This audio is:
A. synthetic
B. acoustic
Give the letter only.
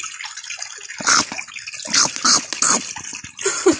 B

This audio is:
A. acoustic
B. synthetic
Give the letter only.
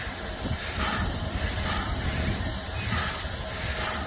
A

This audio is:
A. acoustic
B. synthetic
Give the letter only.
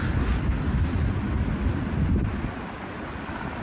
A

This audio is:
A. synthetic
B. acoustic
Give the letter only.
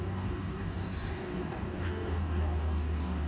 A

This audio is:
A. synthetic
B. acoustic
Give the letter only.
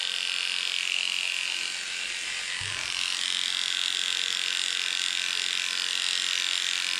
B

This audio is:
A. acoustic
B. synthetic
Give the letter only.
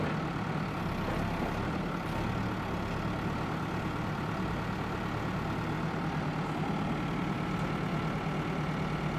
A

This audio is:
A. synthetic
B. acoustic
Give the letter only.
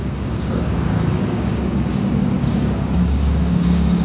A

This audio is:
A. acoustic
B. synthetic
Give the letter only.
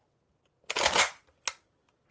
A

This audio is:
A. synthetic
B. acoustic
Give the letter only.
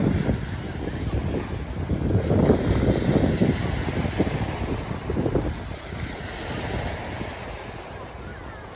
B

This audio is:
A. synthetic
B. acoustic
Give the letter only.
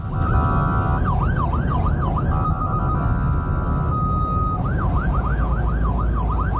B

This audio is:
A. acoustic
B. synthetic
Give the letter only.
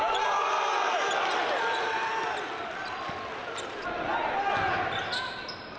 A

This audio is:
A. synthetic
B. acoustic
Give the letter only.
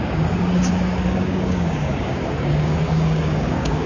A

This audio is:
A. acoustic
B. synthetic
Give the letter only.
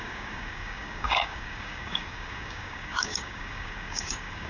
B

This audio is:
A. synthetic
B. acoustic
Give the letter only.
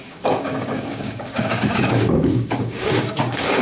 A